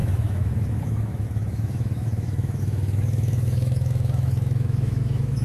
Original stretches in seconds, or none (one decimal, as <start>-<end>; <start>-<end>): none